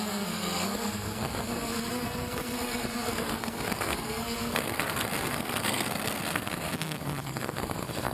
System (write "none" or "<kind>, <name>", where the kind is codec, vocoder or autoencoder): codec, SNAC